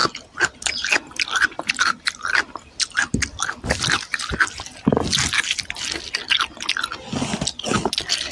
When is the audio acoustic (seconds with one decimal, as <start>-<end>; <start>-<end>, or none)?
0.0-8.3